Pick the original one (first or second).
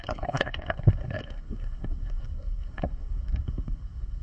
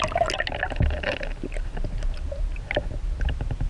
second